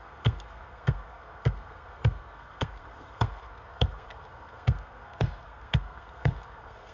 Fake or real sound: fake